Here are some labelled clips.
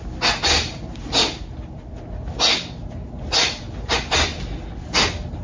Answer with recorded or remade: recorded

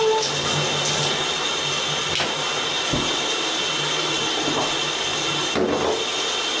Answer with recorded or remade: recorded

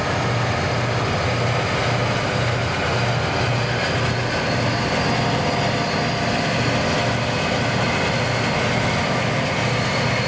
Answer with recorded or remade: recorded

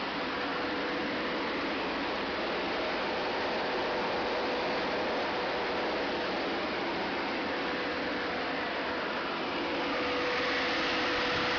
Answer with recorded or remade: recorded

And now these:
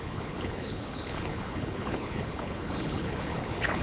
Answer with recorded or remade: remade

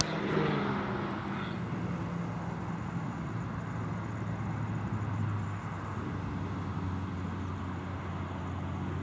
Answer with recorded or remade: recorded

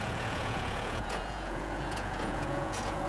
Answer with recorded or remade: remade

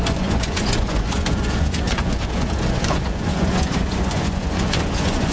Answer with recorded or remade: remade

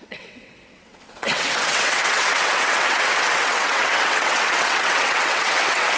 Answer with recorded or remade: remade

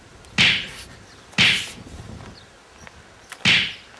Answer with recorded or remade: recorded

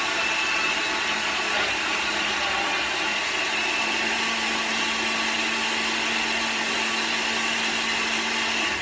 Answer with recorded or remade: recorded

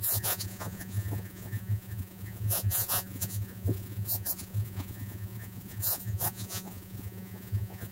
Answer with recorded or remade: remade